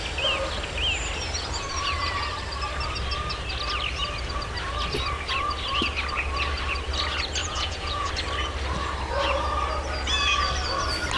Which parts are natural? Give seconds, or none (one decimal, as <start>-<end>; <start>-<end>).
0.0-7.4; 8.1-11.2